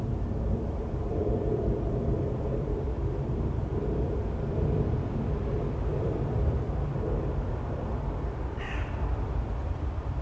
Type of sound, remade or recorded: remade